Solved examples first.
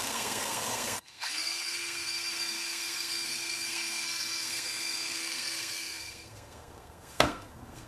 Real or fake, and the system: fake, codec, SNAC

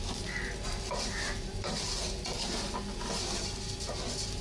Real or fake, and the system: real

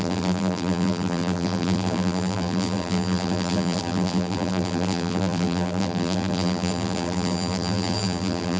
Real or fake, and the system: fake, vocoder, BigVGAN v2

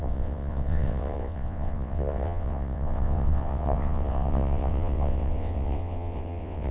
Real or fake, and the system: fake, vocoder, WaveNeXt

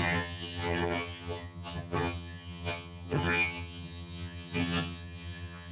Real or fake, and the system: fake, vocoder, HiFi-GAN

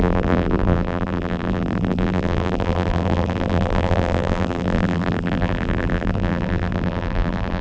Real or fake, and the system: fake, vocoder, BigVGAN v2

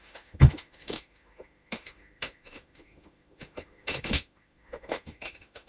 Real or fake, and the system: fake, autoencoder, DAC-VAE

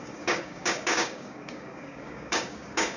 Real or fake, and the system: fake, codec, DAC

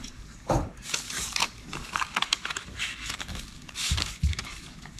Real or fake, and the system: fake, codec, DAC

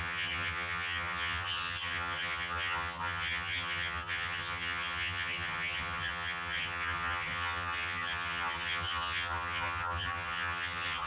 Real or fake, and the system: fake, vocoder, HiFi-GAN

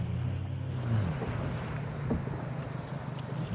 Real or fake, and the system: real